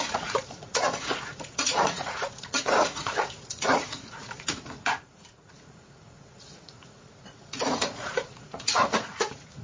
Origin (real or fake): fake